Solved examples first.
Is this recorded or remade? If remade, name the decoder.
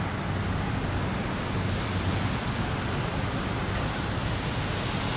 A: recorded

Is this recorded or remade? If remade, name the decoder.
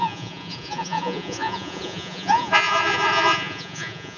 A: remade, vocoder, Vocos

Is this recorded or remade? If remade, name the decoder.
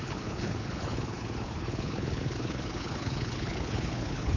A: remade, codec, HILCodec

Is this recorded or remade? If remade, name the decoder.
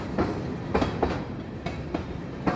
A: recorded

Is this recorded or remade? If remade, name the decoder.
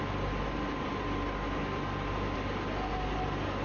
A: recorded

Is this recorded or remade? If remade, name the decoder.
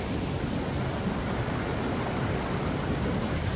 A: recorded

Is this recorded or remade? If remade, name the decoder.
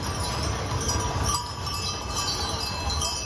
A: recorded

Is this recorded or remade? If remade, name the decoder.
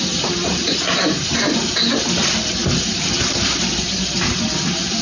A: recorded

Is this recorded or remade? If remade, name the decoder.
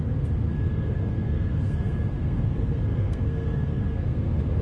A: remade, codec, SNAC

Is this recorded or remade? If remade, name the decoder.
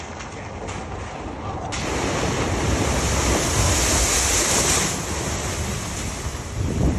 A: recorded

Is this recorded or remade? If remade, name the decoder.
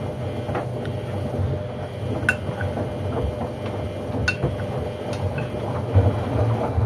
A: recorded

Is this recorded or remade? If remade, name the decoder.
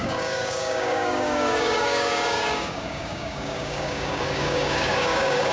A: remade, codec, DAC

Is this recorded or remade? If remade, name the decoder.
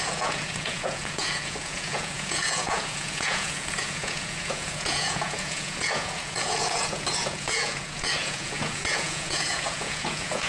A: remade, vocoder, Vocos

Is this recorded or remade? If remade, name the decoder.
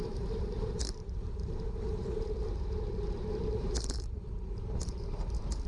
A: remade, vocoder, BigVGAN v2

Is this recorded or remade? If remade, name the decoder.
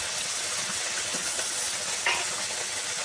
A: remade, vocoder, WaveNeXt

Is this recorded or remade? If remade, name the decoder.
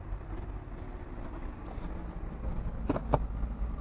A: recorded